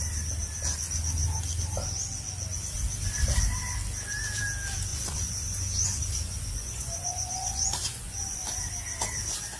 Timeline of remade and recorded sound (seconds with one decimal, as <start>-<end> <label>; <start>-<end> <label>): 0.0-4.9 recorded; 4.9-8.6 remade; 8.6-9.6 recorded